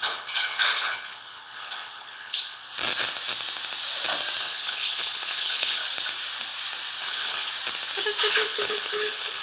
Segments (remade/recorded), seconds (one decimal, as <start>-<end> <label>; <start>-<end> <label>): 0.0-2.6 remade; 2.6-4.4 recorded; 4.4-5.8 remade; 5.8-7.0 recorded; 7.0-7.5 remade; 7.5-8.3 recorded; 8.3-9.4 remade